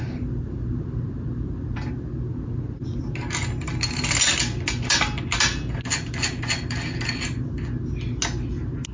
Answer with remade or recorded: recorded